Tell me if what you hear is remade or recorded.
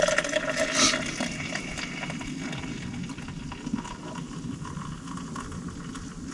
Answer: recorded